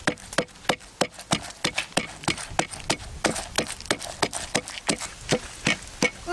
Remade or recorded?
recorded